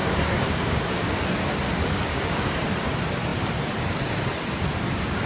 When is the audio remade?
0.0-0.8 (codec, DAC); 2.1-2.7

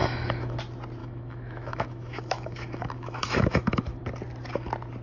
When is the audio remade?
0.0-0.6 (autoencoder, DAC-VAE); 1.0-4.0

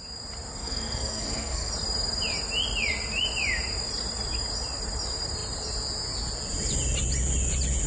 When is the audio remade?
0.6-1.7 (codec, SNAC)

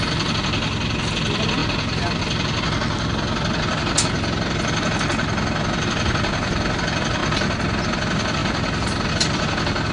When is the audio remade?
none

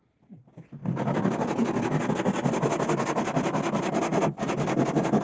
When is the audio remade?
none

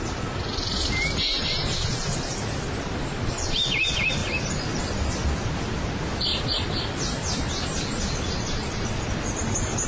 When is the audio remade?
none